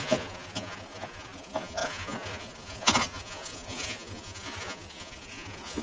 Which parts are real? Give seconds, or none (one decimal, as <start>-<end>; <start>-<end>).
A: none